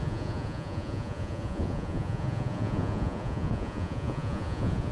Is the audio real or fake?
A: fake